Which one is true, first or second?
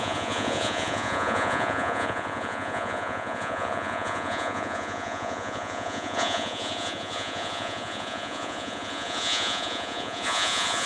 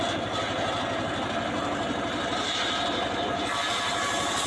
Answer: second